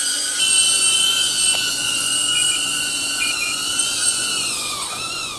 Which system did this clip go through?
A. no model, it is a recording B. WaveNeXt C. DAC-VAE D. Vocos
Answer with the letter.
D